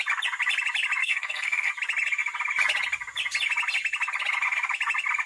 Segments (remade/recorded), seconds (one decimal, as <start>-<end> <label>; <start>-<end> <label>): 0.0-1.0 recorded; 1.0-1.7 remade; 1.7-5.3 recorded